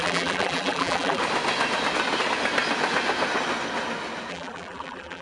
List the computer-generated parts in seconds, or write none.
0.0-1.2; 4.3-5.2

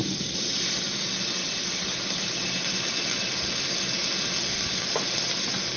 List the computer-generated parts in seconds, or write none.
none

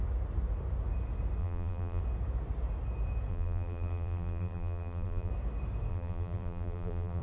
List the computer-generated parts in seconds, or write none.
1.4-2.0; 3.3-5.3; 5.9-7.2

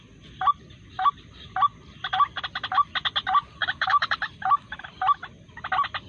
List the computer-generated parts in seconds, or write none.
0.9-1.4; 3.6-4.9